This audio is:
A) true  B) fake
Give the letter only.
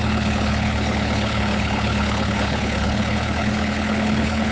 B